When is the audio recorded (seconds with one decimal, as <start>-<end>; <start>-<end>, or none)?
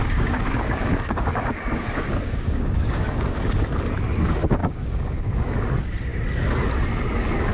3.4-4.6; 5.4-7.5